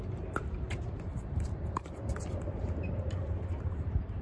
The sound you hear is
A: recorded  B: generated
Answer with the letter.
B